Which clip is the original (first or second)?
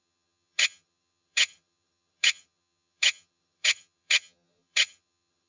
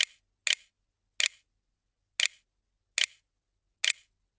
second